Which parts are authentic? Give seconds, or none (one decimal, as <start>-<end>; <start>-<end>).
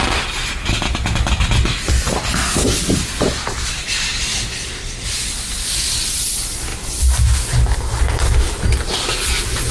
0.0-9.7